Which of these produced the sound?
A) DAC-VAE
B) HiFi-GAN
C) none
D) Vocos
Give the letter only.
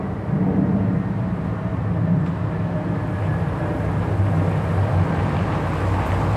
C